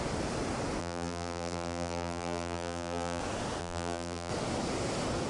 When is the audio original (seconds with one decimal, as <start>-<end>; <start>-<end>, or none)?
0.0-0.8; 3.2-3.6; 4.3-5.3